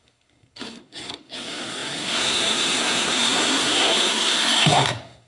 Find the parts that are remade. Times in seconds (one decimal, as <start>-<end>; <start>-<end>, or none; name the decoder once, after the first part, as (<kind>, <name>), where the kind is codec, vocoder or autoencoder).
0.0-5.3 (codec, SNAC)